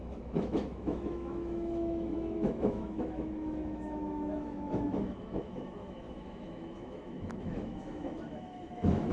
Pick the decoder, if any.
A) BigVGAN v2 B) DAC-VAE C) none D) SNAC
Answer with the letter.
B